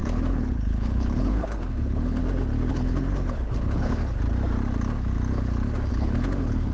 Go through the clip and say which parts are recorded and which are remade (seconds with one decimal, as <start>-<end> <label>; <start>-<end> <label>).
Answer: 0.0-2.2 remade; 2.2-2.7 recorded; 2.7-4.0 remade; 4.0-5.9 recorded; 5.9-6.7 remade